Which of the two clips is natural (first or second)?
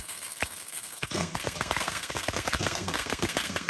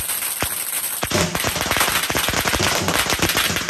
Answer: second